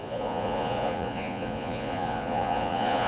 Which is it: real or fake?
fake